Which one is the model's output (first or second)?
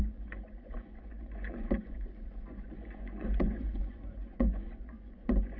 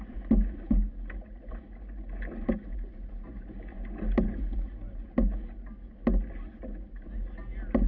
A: first